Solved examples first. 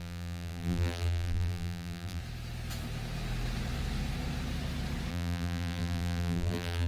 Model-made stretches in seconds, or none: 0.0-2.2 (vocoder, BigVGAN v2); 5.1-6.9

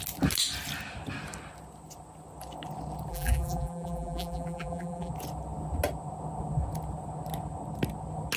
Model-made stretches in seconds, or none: 3.1-5.1 (vocoder, BigVGAN v2)

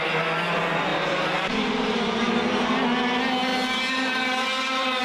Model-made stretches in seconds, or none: 0.9-2.3 (vocoder, BigVGAN v2)

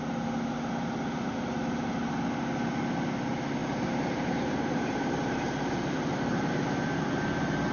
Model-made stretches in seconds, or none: 3.6-6.5 (vocoder, BigVGAN v2)